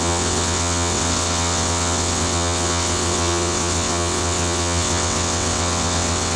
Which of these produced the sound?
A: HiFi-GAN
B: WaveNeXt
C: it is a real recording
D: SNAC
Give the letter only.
B